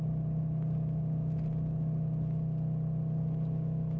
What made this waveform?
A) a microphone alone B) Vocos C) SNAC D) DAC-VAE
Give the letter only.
A